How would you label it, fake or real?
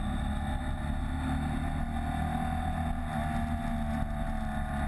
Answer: real